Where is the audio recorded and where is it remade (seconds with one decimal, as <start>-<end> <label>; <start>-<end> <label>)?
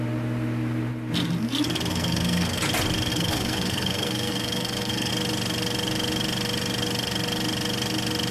0.0-1.9 recorded; 1.9-2.6 remade; 2.6-3.1 recorded; 3.1-5.1 remade; 5.1-8.3 recorded